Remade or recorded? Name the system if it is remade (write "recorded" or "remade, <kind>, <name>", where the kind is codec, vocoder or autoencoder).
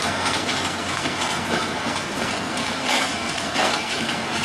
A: remade, codec, SNAC